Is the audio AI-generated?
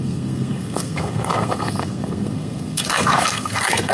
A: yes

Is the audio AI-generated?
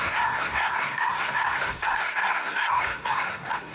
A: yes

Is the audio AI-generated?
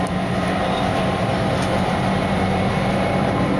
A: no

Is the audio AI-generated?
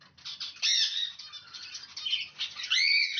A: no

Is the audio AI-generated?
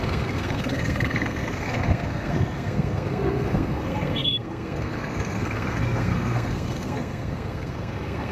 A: yes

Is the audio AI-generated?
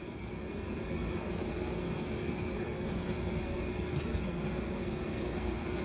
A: yes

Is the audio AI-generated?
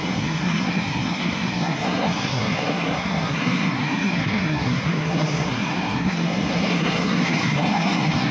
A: yes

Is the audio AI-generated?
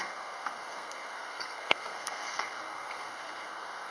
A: yes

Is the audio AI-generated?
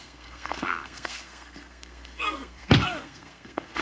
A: yes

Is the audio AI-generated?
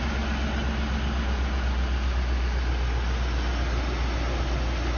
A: no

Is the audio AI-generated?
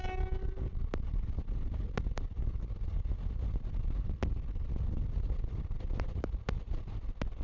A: no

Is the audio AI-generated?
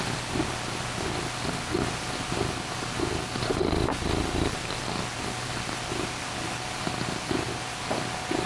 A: no